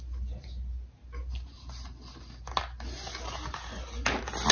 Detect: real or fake real